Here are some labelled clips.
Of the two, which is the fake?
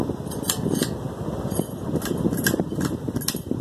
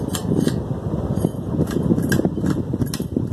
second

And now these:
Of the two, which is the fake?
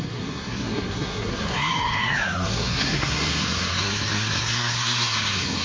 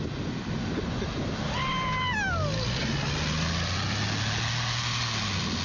first